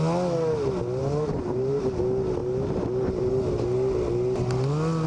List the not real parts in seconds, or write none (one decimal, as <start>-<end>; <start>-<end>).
1.0-2.0; 2.4-3.3